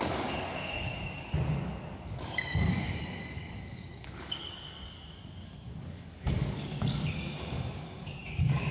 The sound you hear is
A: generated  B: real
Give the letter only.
A